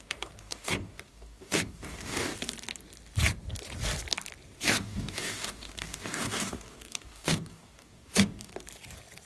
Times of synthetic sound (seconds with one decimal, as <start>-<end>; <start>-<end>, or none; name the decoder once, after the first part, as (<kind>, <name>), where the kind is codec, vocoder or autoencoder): 0.0-2.3 (codec, DAC); 4.6-8.5